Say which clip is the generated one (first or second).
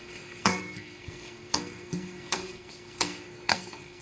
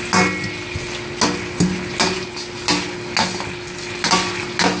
first